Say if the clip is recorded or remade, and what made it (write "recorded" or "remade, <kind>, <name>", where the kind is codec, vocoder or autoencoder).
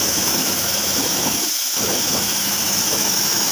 remade, autoencoder, DAC-VAE